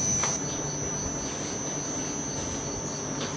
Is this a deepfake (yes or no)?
no